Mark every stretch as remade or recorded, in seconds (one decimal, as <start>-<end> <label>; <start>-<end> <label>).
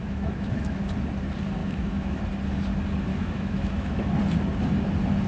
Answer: 0.0-0.8 remade; 0.8-1.6 recorded; 1.6-2.2 remade; 2.2-3.1 recorded; 3.1-4.1 remade; 4.1-5.3 recorded